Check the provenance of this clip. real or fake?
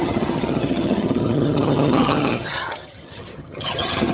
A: fake